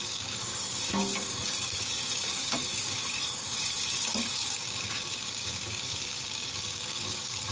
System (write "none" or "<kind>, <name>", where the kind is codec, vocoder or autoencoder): codec, DAC